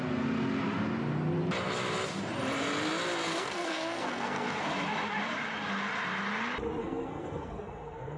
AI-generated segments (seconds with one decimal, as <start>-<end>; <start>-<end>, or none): 3.3-4.7; 6.8-8.2